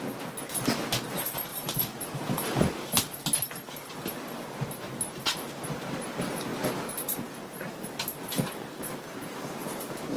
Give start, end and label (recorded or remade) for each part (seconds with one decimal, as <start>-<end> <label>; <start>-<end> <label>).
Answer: 0.0-1.5 recorded; 1.5-3.2 remade; 3.2-10.2 recorded